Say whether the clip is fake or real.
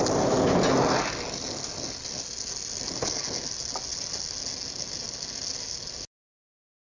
real